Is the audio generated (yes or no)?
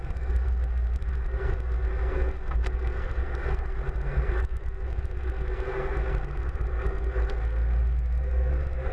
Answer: yes